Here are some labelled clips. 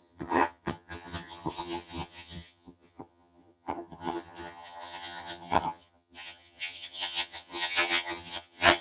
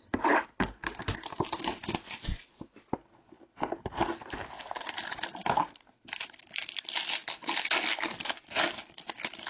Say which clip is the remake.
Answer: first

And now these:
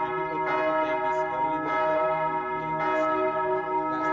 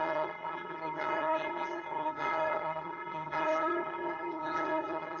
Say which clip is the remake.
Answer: second